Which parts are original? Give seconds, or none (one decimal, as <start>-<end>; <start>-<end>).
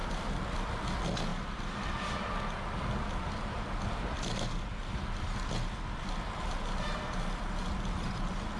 0.8-1.3; 2.2-8.6